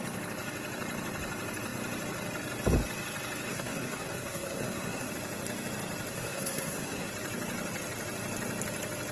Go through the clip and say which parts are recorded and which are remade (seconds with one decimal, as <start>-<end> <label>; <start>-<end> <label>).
0.0-3.5 recorded; 3.5-5.1 remade; 5.1-6.1 recorded; 6.1-7.1 remade; 7.1-9.1 recorded